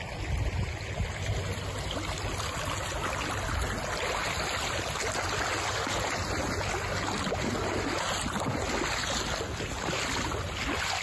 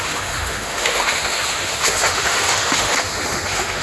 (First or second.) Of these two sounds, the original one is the first